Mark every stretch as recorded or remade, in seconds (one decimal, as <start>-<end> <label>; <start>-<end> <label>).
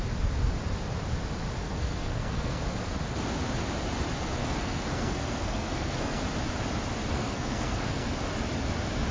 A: 0.0-1.6 recorded; 1.6-2.6 remade; 2.6-4.4 recorded; 4.4-6.2 remade; 6.2-7.1 recorded; 7.1-8.1 remade; 8.1-9.1 recorded